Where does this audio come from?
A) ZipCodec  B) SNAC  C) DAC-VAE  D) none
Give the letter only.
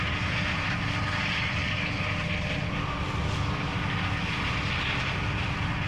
D